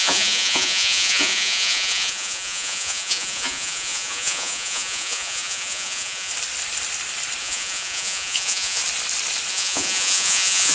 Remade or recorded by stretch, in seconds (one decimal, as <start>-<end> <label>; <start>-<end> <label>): 0.0-6.3 remade; 6.3-7.4 recorded; 7.4-8.8 remade; 8.8-9.5 recorded; 9.5-10.7 remade